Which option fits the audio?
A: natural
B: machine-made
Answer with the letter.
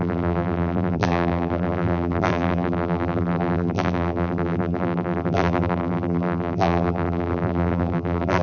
B